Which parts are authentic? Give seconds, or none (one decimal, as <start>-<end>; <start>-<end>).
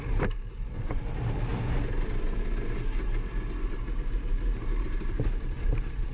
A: 1.5-3.8